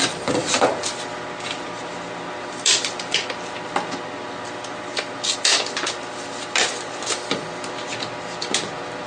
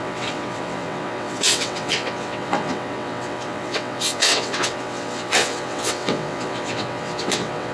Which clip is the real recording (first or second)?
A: first